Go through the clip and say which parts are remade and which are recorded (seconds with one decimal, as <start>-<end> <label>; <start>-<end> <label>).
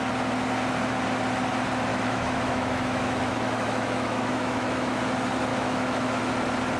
0.0-1.9 recorded; 1.9-5.0 remade; 5.0-5.5 recorded; 5.5-6.2 remade; 6.2-6.8 recorded